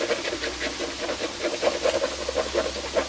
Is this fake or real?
real